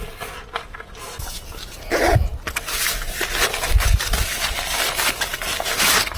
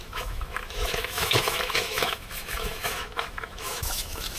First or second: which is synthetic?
second